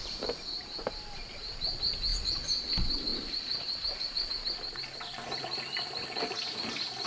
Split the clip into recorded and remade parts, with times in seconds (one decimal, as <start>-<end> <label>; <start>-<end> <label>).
0.0-1.3 remade; 1.3-3.1 recorded; 3.1-4.3 remade; 4.3-7.1 recorded